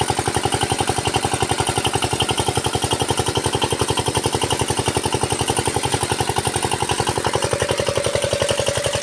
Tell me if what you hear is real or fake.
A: real